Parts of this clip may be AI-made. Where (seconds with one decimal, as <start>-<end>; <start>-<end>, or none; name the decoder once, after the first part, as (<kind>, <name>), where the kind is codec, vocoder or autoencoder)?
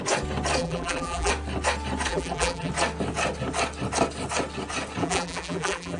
0.6-1.3 (vocoder, BigVGAN v2); 2.1-2.7; 5.0-6.0